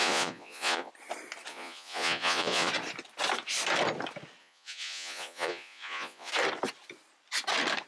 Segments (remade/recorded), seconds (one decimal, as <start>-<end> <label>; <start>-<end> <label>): 0.0-0.9 remade; 0.9-1.5 recorded; 1.5-2.7 remade; 2.7-4.4 recorded; 4.4-6.3 remade; 6.3-7.9 recorded